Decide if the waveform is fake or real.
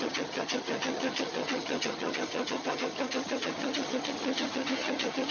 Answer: fake